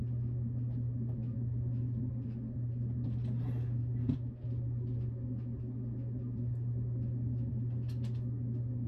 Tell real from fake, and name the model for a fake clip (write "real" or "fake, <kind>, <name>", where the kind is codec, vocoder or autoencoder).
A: real